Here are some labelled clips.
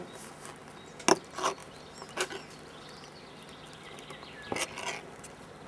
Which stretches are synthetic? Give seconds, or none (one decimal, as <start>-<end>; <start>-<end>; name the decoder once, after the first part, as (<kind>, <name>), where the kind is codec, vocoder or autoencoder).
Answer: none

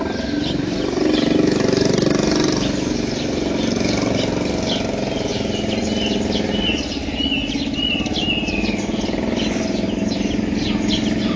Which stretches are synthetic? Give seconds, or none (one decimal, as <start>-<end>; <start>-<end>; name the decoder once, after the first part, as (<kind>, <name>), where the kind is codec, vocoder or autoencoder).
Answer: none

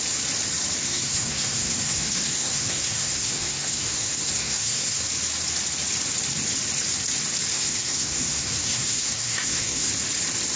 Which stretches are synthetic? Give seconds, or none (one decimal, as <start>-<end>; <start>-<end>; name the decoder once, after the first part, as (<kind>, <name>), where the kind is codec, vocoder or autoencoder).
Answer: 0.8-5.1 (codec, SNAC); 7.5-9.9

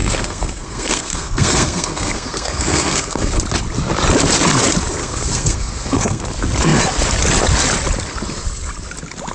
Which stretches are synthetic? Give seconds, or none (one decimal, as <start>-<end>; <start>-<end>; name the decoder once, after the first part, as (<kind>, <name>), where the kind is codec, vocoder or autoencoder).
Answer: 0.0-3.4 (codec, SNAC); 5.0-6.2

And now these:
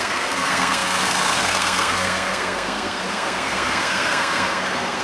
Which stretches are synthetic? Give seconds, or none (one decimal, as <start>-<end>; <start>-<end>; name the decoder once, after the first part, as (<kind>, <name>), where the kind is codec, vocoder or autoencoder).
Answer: 0.0-5.0 (codec, SNAC)